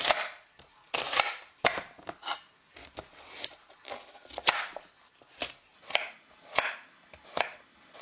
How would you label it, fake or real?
real